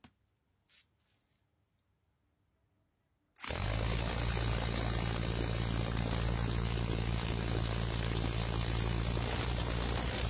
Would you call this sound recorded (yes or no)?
yes